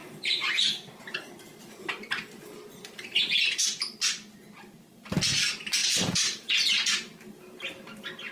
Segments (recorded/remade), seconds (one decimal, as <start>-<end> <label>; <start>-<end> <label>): 0.0-2.1 remade; 2.1-5.8 recorded; 5.8-6.5 remade; 6.5-8.3 recorded